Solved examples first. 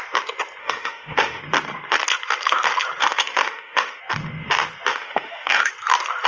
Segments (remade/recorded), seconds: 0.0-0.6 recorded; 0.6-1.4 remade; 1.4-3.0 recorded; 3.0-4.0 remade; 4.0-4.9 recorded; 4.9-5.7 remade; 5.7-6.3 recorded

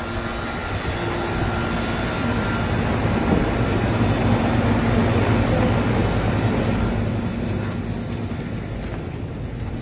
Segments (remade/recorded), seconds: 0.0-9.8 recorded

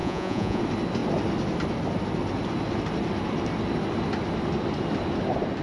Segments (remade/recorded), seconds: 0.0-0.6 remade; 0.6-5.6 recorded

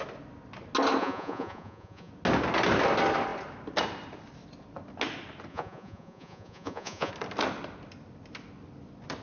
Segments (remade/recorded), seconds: 0.0-1.0 recorded; 1.0-2.1 remade; 2.1-5.5 recorded; 5.5-7.1 remade; 7.1-9.2 recorded